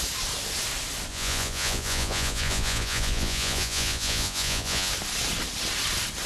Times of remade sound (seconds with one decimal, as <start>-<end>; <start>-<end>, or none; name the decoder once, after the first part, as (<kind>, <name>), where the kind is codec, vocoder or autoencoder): 1.1-4.9 (vocoder, Vocos)